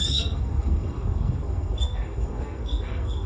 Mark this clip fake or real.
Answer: fake